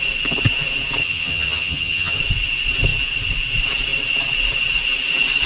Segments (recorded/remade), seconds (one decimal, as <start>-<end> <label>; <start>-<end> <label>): 0.0-1.0 recorded; 1.0-2.2 remade; 2.2-5.5 recorded